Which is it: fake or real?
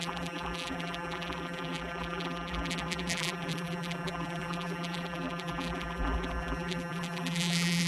fake